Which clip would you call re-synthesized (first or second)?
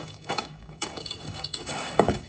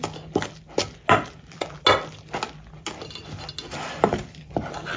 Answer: first